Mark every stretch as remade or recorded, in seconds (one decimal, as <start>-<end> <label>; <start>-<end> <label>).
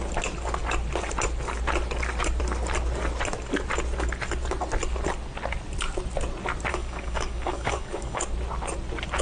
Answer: 0.0-6.7 recorded; 6.7-8.2 remade; 8.2-9.2 recorded